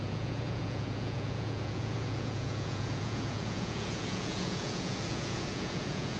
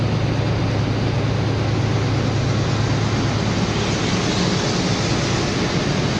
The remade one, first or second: first